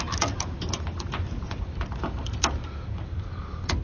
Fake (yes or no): no